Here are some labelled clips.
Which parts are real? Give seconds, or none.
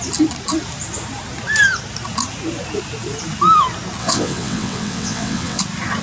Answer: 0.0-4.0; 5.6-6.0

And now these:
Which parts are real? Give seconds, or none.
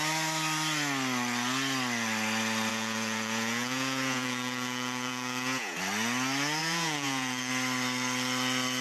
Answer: 0.0-2.7; 5.8-6.6; 7.5-8.8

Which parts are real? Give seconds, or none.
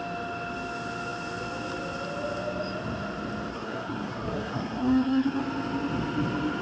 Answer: 0.0-3.5; 5.4-6.6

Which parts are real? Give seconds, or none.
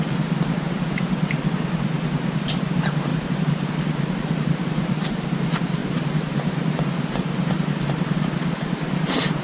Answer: 0.0-3.1; 3.7-5.8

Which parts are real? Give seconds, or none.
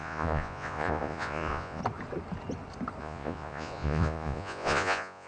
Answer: 1.8-3.0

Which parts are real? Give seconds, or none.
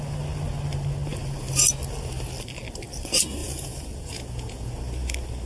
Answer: 0.0-3.4; 4.7-5.5